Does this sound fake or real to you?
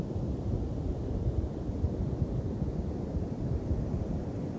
real